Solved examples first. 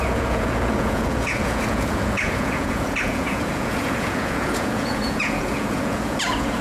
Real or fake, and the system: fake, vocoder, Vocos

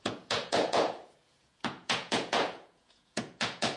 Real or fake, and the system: fake, vocoder, Vocos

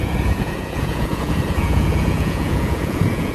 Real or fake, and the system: fake, vocoder, Vocos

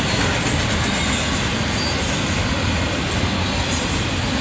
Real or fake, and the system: real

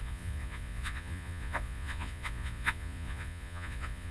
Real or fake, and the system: fake, vocoder, Vocos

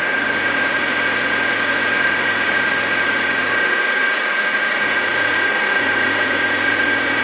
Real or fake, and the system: fake, vocoder, Vocos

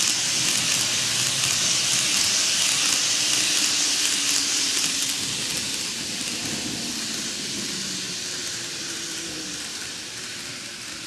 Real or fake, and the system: real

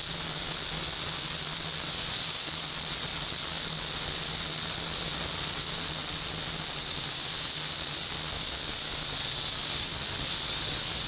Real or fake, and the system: real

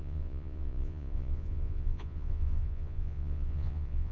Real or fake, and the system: fake, vocoder, Vocos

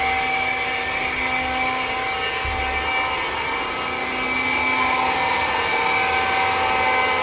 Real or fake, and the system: real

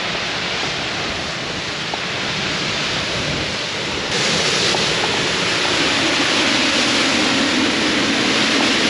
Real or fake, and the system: real